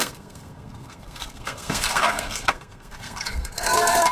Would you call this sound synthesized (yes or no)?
yes